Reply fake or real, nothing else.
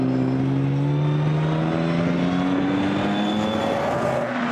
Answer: real